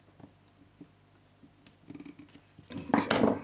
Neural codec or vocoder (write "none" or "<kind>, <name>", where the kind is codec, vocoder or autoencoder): none